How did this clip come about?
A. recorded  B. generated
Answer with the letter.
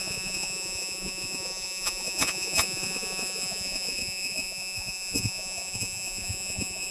B